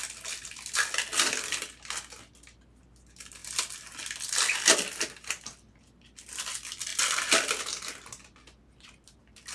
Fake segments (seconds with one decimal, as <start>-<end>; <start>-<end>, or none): none